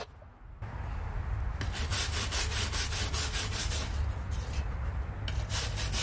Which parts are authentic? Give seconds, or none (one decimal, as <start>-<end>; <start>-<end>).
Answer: 0.0-6.0